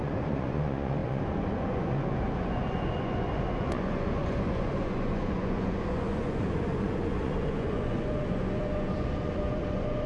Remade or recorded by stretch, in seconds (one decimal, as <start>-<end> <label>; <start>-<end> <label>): 0.0-10.1 remade